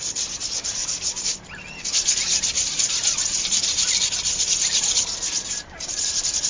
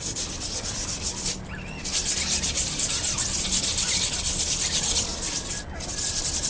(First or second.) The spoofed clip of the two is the first